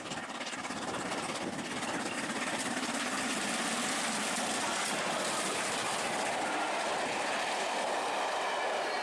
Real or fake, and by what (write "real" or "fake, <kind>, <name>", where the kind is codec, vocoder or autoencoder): real